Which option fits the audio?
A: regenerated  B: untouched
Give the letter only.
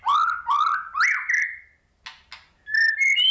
B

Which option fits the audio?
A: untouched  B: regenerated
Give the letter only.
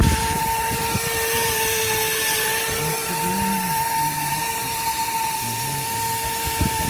B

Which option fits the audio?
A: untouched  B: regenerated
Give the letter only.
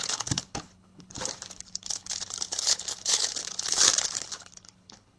B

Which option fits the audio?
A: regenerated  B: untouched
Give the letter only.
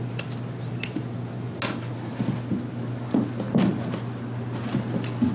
B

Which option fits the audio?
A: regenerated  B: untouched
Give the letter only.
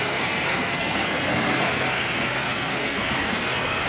A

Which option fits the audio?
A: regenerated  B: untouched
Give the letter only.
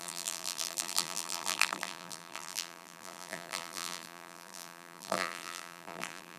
A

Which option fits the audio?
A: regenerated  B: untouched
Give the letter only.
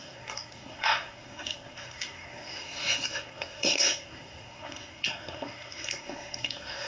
A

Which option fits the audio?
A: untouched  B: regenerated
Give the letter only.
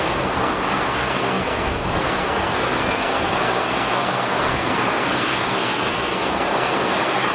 B